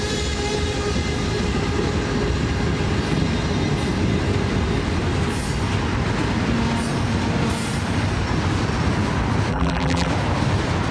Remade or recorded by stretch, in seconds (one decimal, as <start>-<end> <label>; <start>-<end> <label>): 0.0-9.5 recorded; 9.5-10.1 remade; 10.1-10.9 recorded